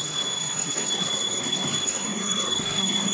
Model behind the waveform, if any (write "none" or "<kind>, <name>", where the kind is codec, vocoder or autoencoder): codec, SNAC